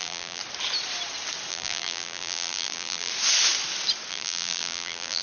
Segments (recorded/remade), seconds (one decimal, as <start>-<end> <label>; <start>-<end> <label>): 0.0-0.4 remade; 0.4-1.5 recorded; 1.5-3.1 remade; 3.1-4.1 recorded; 4.1-5.2 remade